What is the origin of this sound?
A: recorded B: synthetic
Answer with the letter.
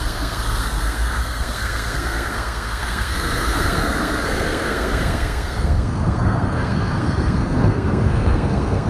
B